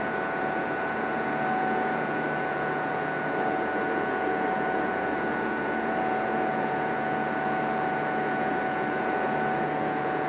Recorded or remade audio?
remade